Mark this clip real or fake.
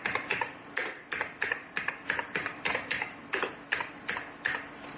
real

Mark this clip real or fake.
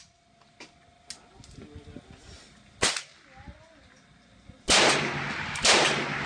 real